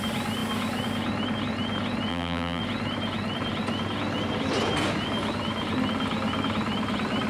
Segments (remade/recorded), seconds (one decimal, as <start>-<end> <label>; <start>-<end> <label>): 0.0-2.1 recorded; 2.1-2.6 remade; 2.6-7.3 recorded